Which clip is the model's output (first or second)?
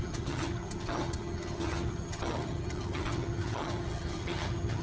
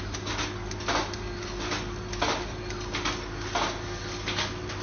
first